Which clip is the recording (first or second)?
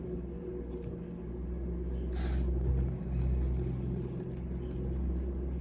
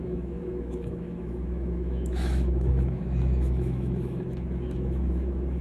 first